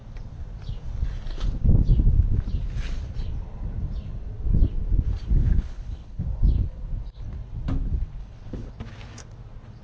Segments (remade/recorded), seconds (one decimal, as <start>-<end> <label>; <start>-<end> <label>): 0.0-5.4 recorded; 5.4-6.2 remade; 6.2-8.2 recorded; 8.2-8.7 remade; 8.7-9.8 recorded

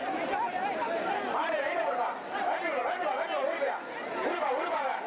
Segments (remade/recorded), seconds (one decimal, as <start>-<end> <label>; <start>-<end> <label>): 0.0-5.1 recorded

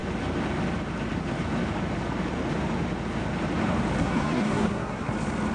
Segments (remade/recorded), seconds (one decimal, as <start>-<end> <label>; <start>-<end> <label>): 0.0-4.0 recorded; 4.0-5.1 remade; 5.1-5.5 recorded

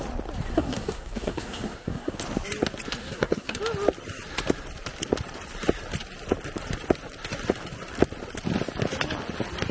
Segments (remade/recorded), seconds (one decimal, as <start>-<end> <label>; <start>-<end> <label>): 0.0-0.5 recorded; 0.5-2.1 remade; 2.1-3.0 recorded; 3.0-3.6 remade; 3.6-9.7 recorded

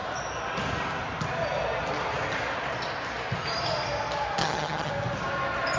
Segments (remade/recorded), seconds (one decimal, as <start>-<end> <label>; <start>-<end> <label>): 0.0-4.4 recorded; 4.4-4.9 remade; 4.9-5.8 recorded

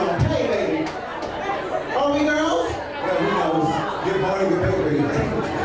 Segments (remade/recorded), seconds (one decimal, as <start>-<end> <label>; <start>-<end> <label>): 0.0-5.6 recorded

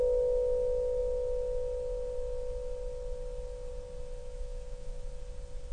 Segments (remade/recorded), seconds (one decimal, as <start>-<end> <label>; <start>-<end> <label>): 0.0-4.2 recorded; 4.2-5.1 remade; 5.1-5.7 recorded